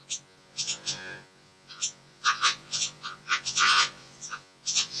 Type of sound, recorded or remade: remade